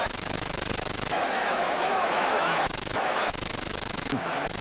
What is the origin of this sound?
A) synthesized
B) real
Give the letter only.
A